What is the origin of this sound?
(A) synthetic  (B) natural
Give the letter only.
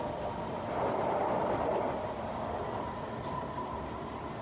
A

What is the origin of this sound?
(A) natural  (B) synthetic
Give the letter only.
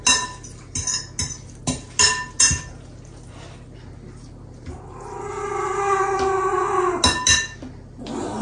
A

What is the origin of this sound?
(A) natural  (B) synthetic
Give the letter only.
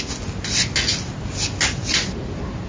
A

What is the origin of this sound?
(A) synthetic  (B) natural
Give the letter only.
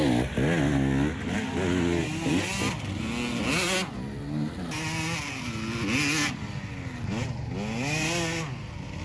B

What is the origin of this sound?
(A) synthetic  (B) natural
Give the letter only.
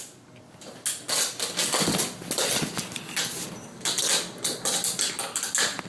B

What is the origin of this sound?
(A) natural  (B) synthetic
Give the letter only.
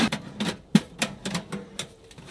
B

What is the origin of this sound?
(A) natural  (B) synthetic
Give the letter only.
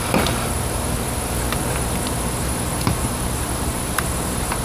B